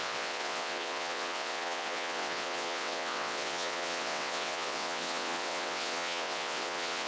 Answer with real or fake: fake